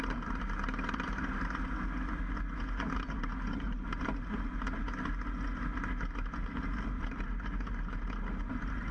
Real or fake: real